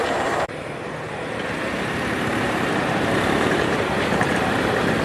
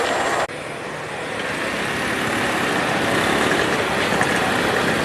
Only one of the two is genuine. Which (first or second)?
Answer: second